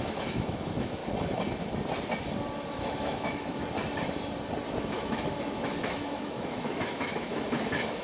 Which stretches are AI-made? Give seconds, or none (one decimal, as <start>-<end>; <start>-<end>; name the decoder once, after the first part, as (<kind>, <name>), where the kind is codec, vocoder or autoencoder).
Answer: 0.0-1.0 (autoencoder, DAC-VAE); 2.7-3.6; 4.8-8.0